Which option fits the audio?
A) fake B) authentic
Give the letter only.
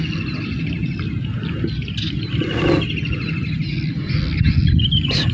B